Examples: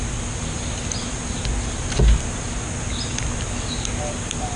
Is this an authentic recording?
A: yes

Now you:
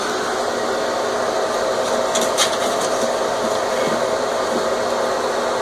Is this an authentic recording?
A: yes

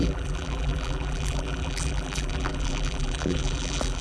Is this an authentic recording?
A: no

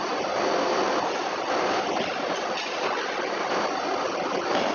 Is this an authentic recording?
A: no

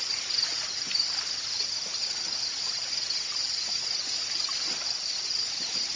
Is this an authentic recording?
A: yes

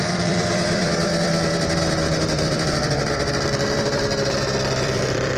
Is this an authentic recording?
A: no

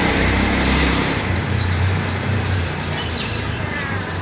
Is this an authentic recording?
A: no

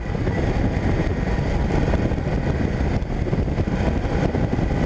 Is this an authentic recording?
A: yes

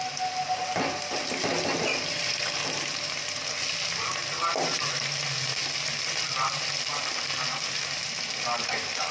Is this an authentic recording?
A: yes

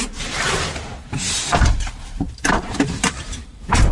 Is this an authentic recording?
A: no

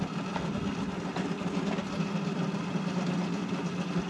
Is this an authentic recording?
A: yes